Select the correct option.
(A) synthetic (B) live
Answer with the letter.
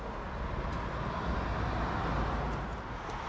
B